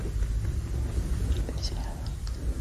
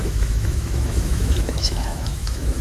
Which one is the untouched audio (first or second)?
first